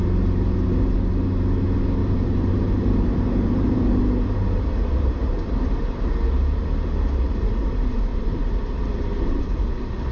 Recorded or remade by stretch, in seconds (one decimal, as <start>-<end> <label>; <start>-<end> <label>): 0.0-2.0 recorded; 2.0-3.9 remade; 3.9-4.8 recorded; 4.8-5.3 remade; 5.3-8.1 recorded; 8.1-8.9 remade; 8.9-10.1 recorded